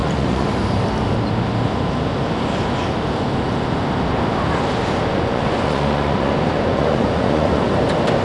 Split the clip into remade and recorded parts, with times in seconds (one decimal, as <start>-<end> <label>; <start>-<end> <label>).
0.0-0.5 remade; 0.5-5.1 recorded; 5.1-7.6 remade; 7.6-8.2 recorded